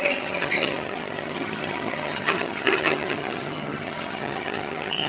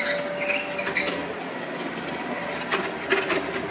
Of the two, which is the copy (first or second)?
first